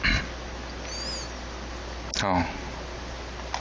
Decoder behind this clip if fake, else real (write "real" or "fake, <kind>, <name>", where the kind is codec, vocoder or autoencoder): real